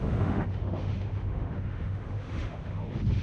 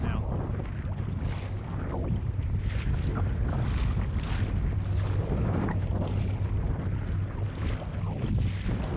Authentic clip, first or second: second